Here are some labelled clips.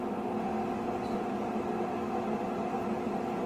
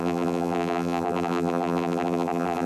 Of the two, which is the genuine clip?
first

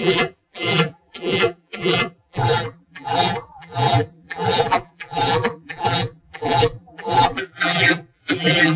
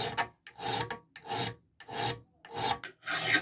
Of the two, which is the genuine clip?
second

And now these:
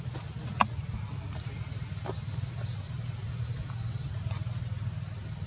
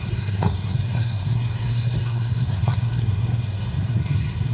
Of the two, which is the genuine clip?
first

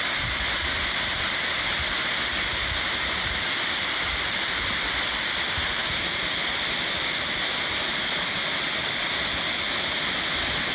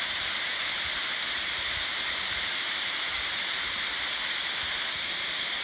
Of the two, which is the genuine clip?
first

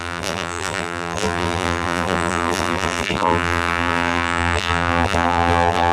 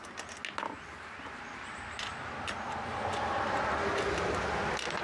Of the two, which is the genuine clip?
second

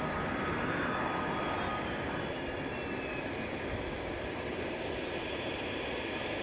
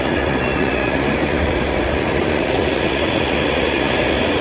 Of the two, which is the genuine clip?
first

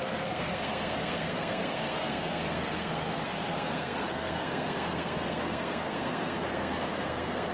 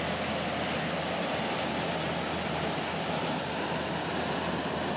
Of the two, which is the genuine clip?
second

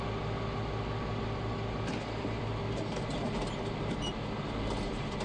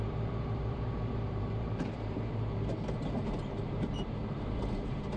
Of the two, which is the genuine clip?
first